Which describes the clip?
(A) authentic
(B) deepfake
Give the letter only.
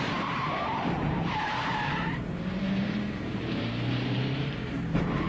B